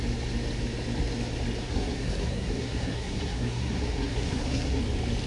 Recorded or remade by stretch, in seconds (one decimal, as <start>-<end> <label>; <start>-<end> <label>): 0.0-1.6 recorded; 1.6-4.8 remade; 4.8-5.3 recorded

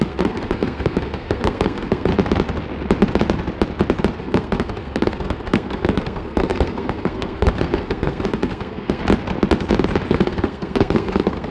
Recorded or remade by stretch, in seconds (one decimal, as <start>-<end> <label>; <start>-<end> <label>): 0.0-2.1 remade; 2.1-4.2 recorded; 4.2-9.0 remade; 9.0-10.1 recorded; 10.1-11.5 remade

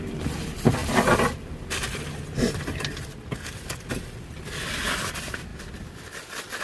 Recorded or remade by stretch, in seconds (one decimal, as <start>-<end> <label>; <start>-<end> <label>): 0.0-6.6 recorded

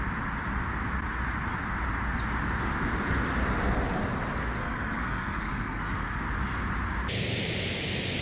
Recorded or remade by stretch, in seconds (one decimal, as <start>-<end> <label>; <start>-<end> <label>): 0.0-4.6 recorded; 4.6-6.2 remade; 6.2-8.2 recorded